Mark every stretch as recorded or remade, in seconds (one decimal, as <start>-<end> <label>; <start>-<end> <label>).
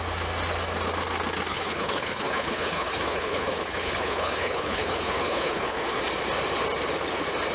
0.0-1.5 recorded; 1.5-6.0 remade; 6.0-7.5 recorded